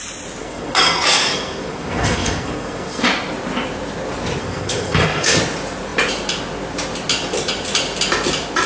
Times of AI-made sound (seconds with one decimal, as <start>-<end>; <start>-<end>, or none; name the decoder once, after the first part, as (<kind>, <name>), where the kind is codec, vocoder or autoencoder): 0.4-3.0 (codec, SNAC); 4.4-5.4